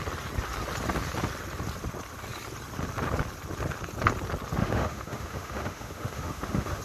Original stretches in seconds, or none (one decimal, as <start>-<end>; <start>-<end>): 0.0-4.6